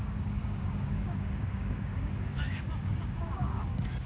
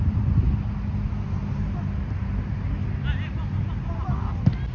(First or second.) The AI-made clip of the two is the first